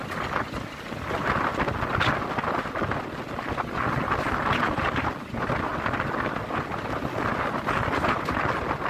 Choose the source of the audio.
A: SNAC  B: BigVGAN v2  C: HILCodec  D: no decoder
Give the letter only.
D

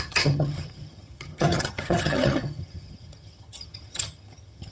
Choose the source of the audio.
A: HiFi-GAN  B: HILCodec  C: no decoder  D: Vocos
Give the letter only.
A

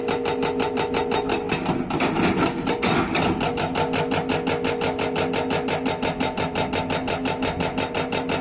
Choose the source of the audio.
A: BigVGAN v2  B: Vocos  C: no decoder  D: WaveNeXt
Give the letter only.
C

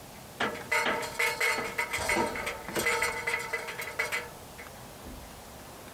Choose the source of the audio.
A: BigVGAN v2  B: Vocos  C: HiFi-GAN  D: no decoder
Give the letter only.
D